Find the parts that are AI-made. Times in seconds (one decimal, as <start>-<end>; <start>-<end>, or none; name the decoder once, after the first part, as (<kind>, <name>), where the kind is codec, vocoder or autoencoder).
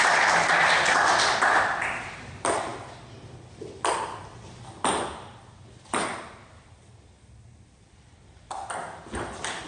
none